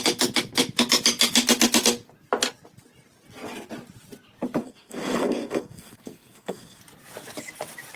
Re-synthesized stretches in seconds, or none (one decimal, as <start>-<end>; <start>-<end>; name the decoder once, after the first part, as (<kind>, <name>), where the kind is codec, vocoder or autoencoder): 4.6-6.8 (codec, SNAC)